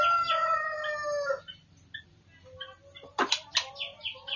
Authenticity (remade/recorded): recorded